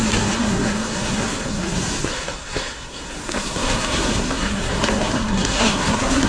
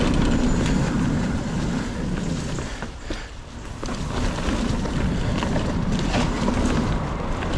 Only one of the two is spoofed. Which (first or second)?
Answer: first